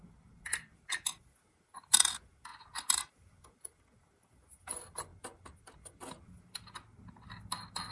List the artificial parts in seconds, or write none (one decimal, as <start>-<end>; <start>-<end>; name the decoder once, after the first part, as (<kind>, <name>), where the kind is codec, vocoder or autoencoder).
none